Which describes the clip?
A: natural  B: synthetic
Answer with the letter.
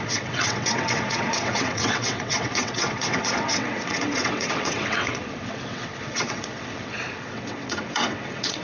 B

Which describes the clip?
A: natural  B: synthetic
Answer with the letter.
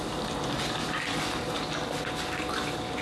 A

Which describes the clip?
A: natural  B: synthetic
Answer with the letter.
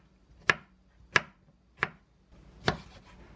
A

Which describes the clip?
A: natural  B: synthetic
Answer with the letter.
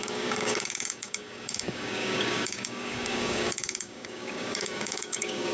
B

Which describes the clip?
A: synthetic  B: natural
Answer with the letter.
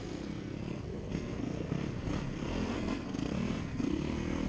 A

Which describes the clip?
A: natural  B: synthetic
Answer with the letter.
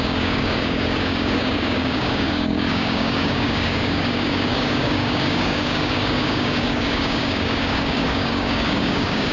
B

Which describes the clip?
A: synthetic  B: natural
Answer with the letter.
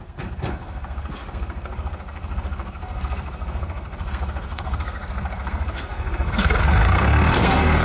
A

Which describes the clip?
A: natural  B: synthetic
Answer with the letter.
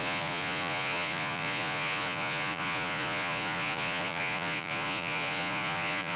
B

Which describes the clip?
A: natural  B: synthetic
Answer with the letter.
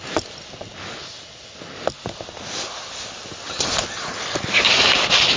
A